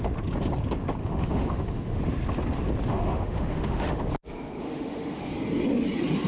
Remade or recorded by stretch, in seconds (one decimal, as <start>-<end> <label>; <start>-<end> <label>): 0.0-1.0 recorded; 1.0-2.0 remade; 2.0-2.9 recorded; 2.9-4.0 remade; 4.0-4.6 recorded; 4.6-5.2 remade; 5.2-6.3 recorded